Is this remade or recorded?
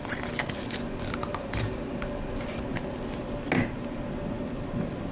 recorded